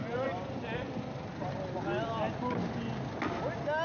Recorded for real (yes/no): yes